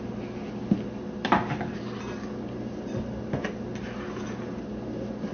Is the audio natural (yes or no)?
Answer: yes